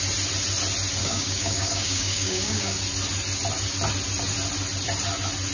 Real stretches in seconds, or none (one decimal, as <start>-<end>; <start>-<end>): 0.0-1.0; 2.8-5.5